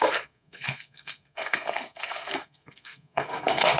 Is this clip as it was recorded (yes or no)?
no